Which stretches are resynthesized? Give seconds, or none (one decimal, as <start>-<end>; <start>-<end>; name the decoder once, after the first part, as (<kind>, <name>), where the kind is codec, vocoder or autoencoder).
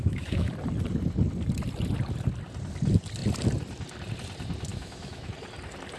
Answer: 0.0-0.5 (autoencoder, DAC-VAE); 4.7-5.3